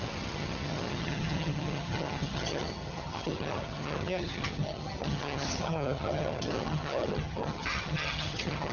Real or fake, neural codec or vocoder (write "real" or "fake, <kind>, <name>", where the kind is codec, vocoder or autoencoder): fake, vocoder, HiFi-GAN